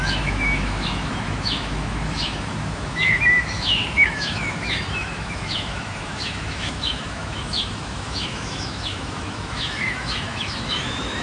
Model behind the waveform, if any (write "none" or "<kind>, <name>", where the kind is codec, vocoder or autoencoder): autoencoder, DAC-VAE